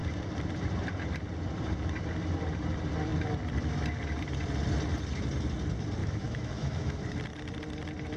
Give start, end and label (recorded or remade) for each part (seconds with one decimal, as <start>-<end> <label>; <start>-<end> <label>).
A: 0.0-6.0 recorded; 6.0-7.0 remade; 7.0-8.2 recorded